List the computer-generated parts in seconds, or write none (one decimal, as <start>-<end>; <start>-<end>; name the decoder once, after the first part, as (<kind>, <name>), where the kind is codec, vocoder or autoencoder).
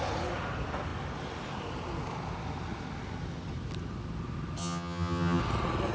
4.6-5.4 (vocoder, HiFi-GAN)